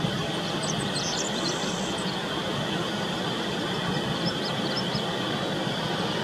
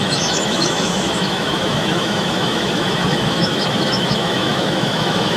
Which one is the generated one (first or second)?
second